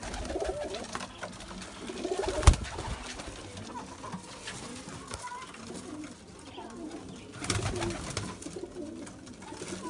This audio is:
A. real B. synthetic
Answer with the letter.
A